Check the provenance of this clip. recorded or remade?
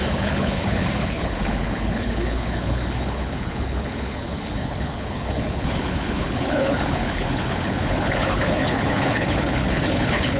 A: remade